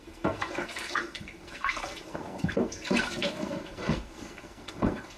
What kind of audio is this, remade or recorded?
remade